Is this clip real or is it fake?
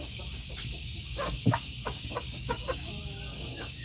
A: fake